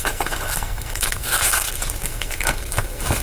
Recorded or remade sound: remade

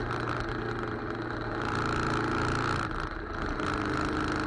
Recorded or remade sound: recorded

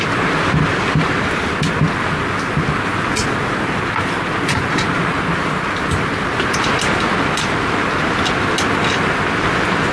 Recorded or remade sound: recorded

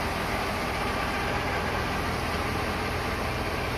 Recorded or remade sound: recorded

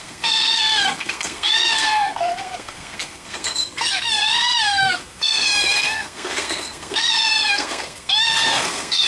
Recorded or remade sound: remade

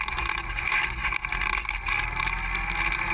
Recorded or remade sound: recorded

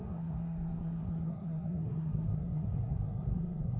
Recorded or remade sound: remade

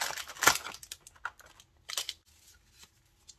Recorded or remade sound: recorded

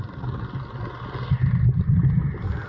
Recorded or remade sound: recorded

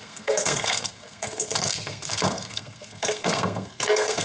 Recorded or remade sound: remade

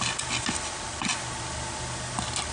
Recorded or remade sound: recorded